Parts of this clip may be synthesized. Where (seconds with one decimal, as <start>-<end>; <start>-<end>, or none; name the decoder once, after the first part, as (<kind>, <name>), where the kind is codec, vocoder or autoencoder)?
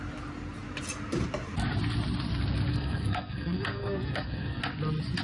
2.7-4.6 (codec, SNAC)